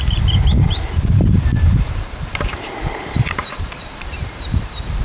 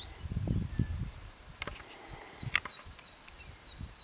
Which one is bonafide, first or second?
second